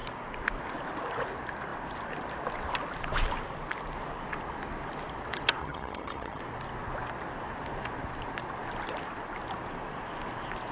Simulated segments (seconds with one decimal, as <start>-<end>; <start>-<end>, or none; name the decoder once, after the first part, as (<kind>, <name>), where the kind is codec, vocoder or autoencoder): 5.6-6.4 (vocoder, HiFi-GAN)